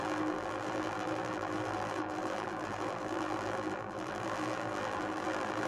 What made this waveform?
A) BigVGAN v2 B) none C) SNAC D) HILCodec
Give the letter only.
A